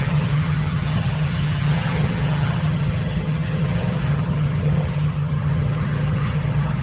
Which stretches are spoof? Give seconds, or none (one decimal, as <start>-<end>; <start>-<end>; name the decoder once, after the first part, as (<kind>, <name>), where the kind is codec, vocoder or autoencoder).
0.0-6.8 (vocoder, HiFi-GAN)